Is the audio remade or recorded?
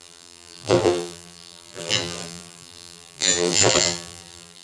remade